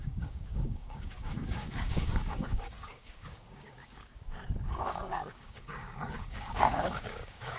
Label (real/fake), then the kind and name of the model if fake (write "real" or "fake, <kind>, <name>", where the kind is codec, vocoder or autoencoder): fake, codec, DAC